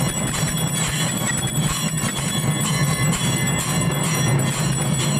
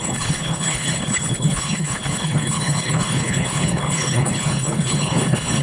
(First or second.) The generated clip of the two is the second